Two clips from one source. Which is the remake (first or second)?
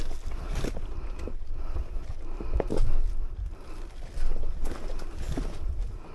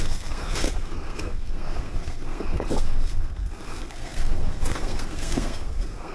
second